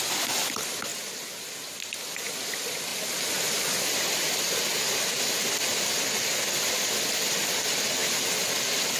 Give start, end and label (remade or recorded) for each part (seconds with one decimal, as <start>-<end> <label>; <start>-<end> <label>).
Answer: 0.0-0.9 remade; 0.9-1.8 recorded; 1.8-2.9 remade; 2.9-7.1 recorded; 7.1-9.0 remade